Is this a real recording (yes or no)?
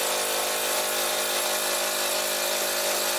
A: yes